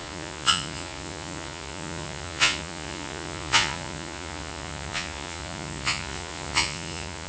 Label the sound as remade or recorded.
remade